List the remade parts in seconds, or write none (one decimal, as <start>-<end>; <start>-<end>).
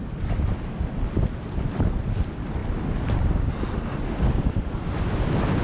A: none